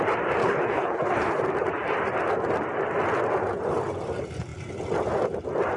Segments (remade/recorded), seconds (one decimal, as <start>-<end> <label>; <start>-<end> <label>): 0.0-0.4 recorded; 0.4-1.4 remade; 1.4-5.8 recorded